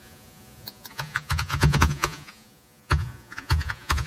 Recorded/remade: remade